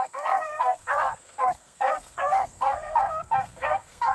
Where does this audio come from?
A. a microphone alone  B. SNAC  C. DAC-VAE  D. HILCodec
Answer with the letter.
B